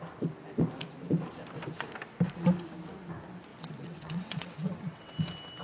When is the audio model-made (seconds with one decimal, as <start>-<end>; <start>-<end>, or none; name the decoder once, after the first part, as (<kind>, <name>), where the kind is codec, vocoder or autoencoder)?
3.5-5.1 (vocoder, WaveNeXt)